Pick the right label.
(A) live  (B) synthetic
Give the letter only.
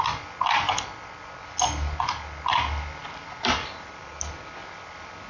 A